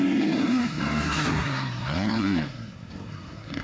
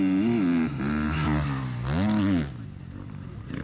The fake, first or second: first